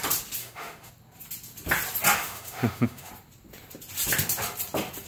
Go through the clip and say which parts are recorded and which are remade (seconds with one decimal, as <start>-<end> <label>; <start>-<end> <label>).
0.0-0.4 recorded; 0.4-0.9 remade; 0.9-2.1 recorded; 2.1-3.1 remade; 3.1-5.1 recorded